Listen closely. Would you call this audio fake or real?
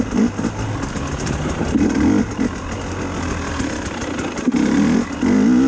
real